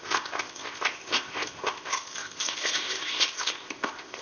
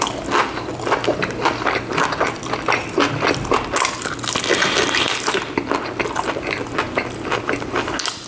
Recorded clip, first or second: second